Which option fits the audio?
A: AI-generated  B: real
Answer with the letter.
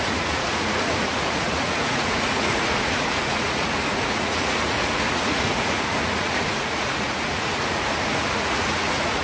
A